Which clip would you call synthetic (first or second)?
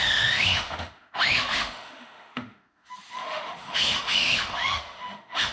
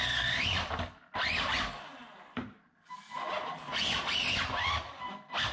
first